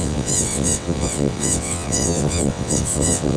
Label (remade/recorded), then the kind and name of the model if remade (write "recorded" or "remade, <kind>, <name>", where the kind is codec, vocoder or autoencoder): remade, vocoder, WaveNeXt